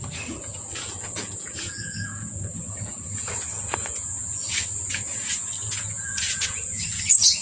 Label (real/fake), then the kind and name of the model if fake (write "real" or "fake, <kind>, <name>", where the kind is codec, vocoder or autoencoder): fake, vocoder, Vocos